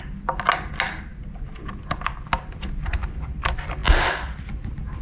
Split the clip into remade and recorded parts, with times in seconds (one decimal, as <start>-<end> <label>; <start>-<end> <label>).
0.0-5.0 recorded